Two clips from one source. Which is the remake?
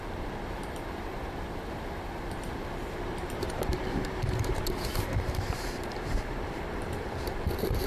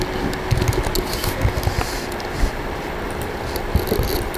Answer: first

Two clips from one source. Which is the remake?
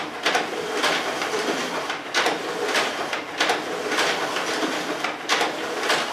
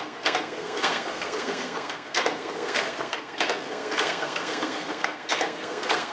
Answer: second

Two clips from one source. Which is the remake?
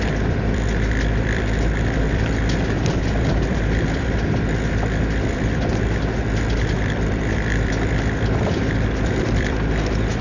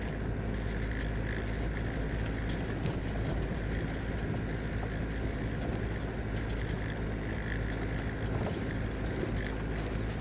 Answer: first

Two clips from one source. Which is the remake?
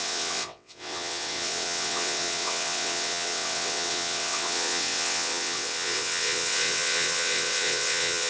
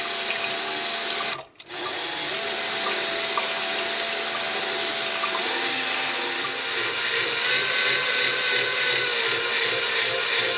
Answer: first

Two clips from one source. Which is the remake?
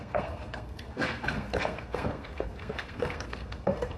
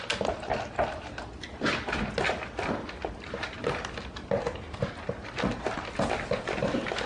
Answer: first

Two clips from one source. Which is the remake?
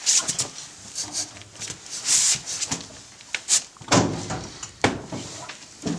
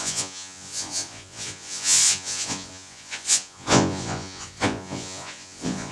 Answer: second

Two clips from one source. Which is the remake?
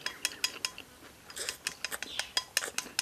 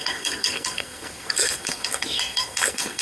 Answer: second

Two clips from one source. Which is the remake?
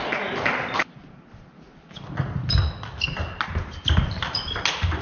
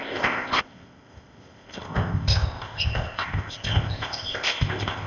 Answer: second